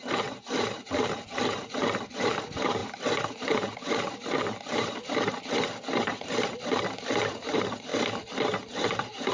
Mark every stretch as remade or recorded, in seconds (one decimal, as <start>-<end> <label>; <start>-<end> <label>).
0.0-7.9 remade; 7.9-8.6 recorded; 8.6-9.3 remade